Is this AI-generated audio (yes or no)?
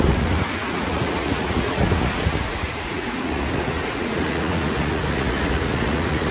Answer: yes